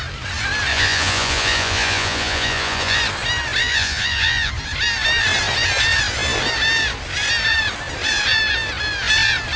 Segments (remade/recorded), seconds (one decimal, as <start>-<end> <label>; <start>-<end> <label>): 0.0-0.7 recorded; 0.7-3.0 remade; 3.0-3.6 recorded; 3.6-4.5 remade; 4.5-9.6 recorded